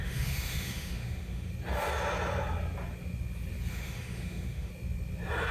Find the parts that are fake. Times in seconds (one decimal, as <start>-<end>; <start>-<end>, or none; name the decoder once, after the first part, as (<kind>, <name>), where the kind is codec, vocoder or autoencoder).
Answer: 0.0-1.5 (autoencoder, DAC-VAE); 3.7-4.7